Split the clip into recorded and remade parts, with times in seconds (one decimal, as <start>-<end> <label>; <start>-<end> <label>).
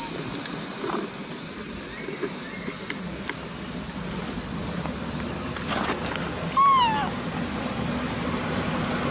0.0-9.1 recorded